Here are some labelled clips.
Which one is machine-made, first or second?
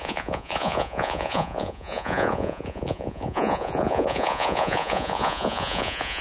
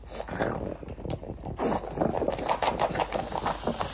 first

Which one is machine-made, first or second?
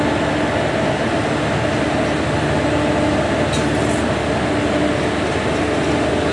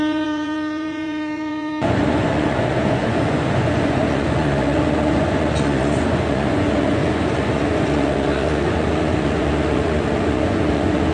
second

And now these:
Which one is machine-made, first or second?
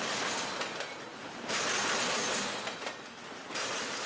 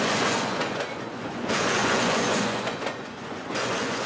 second